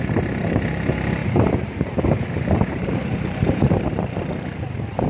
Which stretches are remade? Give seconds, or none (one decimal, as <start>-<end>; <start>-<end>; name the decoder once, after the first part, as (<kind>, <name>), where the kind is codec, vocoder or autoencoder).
1.2-4.3 (vocoder, BigVGAN v2)